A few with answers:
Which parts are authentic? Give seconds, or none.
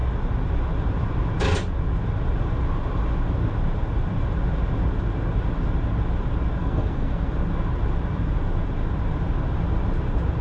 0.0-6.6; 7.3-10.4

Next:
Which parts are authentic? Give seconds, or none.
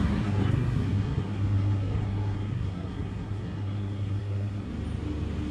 4.7-5.5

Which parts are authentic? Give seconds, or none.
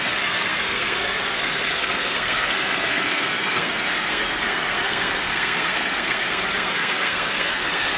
none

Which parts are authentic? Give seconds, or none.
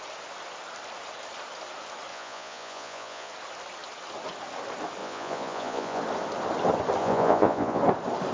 0.0-2.1; 3.3-5.0; 6.0-7.0; 7.8-8.3